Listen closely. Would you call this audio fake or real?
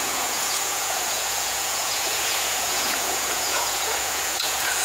fake